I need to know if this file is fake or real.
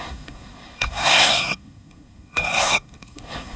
fake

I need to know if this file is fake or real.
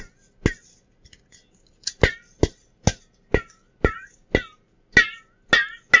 real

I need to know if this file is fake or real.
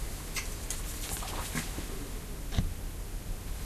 real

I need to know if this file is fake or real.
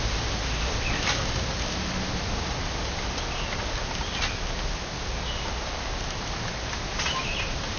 real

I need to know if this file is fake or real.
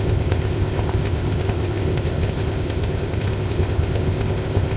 fake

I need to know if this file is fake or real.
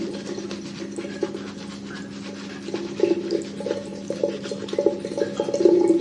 real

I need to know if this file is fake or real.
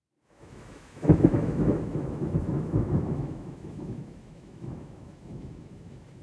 fake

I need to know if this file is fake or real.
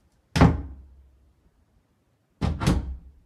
real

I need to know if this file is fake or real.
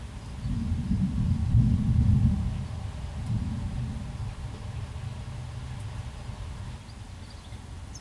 real